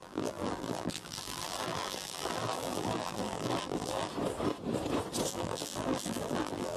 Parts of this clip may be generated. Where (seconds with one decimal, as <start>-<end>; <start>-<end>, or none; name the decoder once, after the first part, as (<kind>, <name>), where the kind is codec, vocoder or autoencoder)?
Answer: 0.0-4.1 (vocoder, BigVGAN v2); 5.3-6.8